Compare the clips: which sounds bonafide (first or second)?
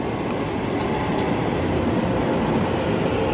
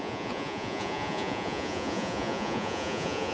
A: first